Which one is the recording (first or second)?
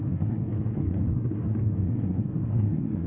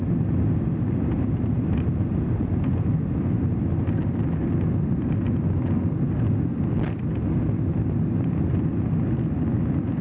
second